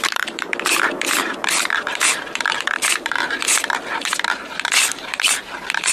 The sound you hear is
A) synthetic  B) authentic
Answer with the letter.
A